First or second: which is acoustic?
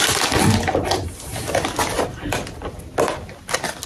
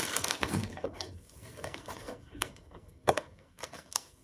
first